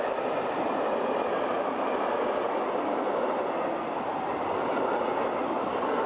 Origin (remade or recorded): recorded